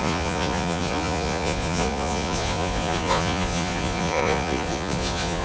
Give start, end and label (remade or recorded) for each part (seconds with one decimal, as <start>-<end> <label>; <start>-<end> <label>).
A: 0.0-5.4 remade